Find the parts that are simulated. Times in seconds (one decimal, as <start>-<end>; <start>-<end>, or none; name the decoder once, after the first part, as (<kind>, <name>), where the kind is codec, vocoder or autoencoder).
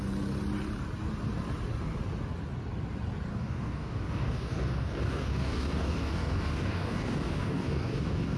3.3-8.4 (codec, DAC)